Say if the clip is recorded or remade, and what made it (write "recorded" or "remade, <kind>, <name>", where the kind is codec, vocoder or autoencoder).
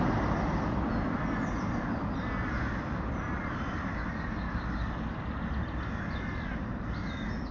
recorded